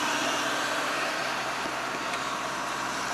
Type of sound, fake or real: real